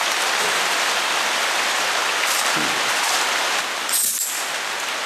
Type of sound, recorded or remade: recorded